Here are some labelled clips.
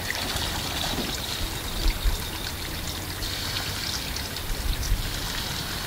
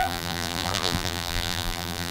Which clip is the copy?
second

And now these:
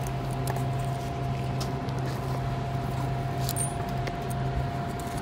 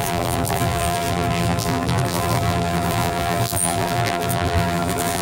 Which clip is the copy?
second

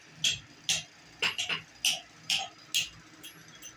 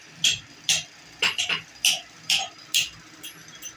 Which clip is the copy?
second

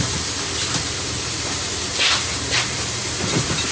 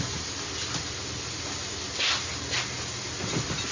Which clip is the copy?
first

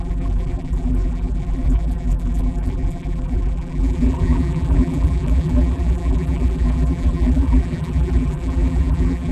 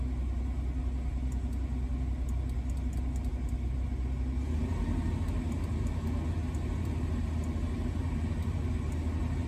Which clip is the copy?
first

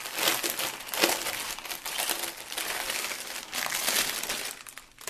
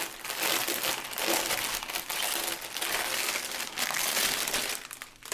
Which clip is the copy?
first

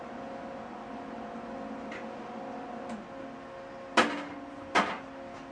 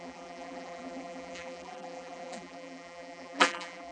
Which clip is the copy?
second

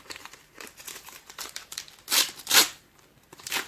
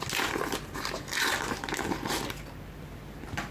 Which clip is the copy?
first